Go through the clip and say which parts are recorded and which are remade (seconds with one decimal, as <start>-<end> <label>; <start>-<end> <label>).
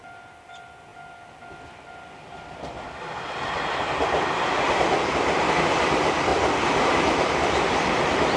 0.0-0.9 remade; 0.9-5.5 recorded; 5.5-6.3 remade; 6.3-6.9 recorded; 6.9-8.4 remade